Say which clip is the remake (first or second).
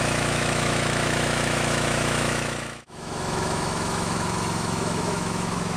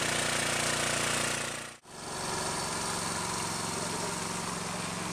first